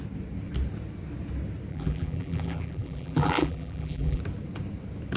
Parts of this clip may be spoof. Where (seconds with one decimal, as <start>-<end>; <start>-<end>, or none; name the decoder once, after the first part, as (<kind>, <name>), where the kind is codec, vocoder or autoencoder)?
1.7-4.2 (vocoder, BigVGAN v2)

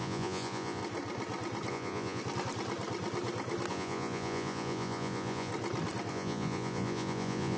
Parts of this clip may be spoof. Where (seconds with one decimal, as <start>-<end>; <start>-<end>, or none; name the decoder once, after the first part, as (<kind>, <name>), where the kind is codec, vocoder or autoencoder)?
0.0-0.8 (vocoder, Vocos); 1.7-2.2; 3.7-5.5; 6.1-7.6

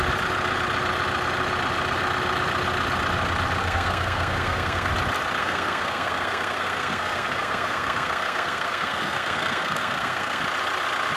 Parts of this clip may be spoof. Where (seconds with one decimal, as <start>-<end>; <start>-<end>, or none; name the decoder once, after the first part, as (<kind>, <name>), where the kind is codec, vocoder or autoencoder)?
3.6-4.9 (codec, SNAC); 5.4-10.4